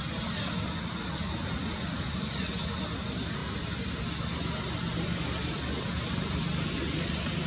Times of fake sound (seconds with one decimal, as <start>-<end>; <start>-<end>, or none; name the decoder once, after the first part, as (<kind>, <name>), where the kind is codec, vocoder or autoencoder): none